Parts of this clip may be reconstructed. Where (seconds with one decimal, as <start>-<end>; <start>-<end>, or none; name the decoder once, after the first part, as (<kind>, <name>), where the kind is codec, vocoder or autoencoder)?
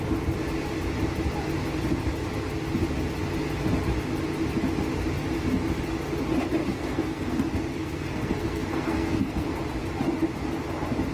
6.6-9.6 (codec, SNAC)